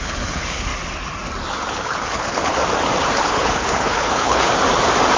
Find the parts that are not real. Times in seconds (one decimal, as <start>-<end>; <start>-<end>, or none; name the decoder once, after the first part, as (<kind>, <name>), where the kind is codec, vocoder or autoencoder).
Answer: 0.0-0.7 (codec, HILCodec); 1.7-2.6; 3.2-4.5

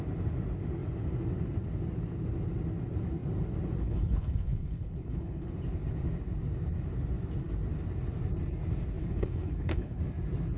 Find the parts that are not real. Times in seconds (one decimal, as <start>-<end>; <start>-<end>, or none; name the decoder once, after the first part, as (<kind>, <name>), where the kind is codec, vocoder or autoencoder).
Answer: 3.8-5.5 (codec, HILCodec); 9.0-10.0

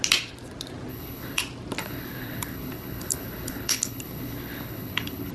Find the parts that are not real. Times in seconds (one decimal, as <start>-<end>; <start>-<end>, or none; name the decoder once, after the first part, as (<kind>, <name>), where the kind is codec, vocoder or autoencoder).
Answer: 0.9-1.4 (codec, HILCodec); 1.8-5.3

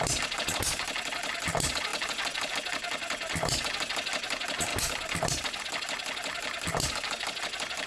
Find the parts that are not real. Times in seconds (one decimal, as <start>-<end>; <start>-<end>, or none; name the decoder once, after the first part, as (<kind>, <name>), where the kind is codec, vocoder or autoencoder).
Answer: none

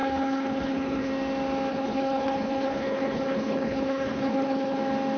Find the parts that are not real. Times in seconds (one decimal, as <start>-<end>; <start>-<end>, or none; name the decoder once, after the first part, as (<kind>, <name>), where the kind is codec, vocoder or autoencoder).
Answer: 0.0-1.1 (codec, HILCodec); 1.7-4.8

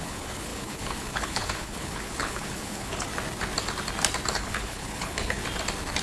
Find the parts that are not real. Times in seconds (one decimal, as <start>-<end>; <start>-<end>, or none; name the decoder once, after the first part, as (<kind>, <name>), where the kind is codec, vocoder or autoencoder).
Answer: 0.0-3.1 (codec, HILCodec); 4.3-5.4